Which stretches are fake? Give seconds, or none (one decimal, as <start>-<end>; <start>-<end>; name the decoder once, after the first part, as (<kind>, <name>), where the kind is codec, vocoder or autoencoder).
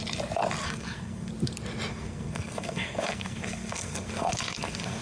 0.6-1.3 (codec, SNAC); 1.9-5.0